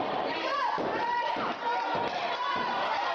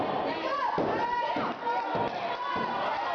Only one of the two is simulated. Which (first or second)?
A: first